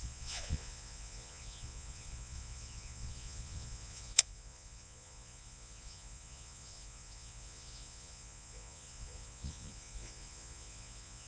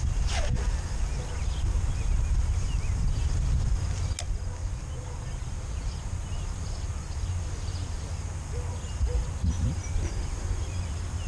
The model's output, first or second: first